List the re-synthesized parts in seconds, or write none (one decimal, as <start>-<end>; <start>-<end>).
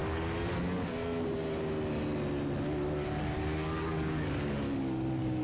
3.2-5.4